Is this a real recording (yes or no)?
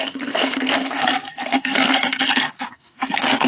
no